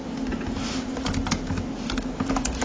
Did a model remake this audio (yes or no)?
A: no